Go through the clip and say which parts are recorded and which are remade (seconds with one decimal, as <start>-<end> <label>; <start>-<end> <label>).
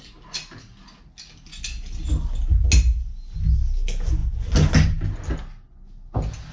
0.0-6.5 recorded